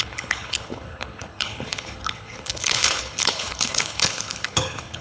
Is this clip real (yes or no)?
no